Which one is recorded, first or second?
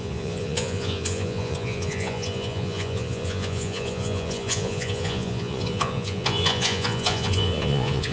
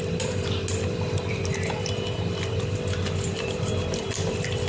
second